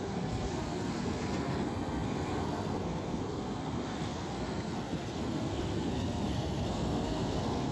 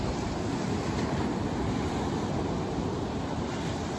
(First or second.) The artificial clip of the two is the first